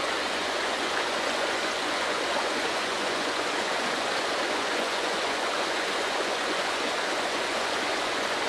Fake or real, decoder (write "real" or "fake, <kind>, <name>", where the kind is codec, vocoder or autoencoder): fake, vocoder, Vocos